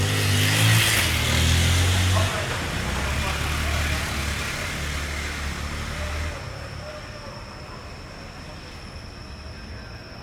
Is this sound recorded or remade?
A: recorded